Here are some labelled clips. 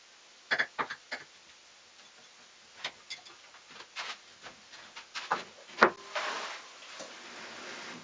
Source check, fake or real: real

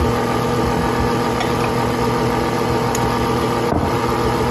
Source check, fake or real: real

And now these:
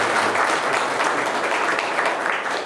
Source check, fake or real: real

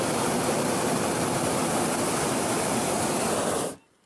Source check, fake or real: real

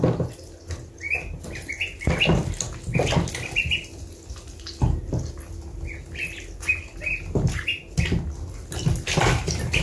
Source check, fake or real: real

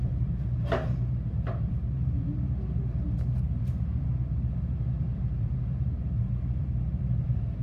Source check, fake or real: fake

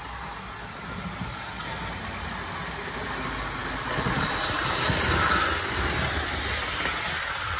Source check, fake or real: real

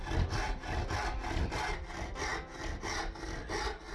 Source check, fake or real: real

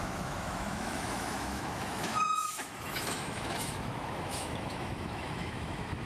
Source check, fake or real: fake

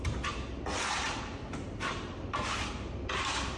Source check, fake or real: real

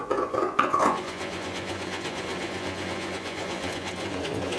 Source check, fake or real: fake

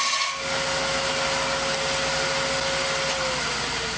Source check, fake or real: real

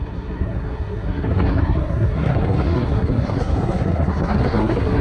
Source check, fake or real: fake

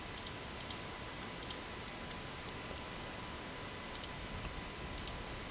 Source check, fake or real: real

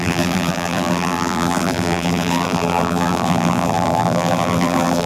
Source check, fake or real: fake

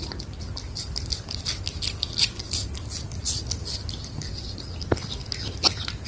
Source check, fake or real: real